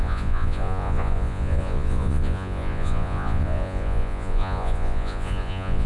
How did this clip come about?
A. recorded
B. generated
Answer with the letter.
B